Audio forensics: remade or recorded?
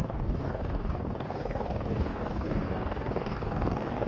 remade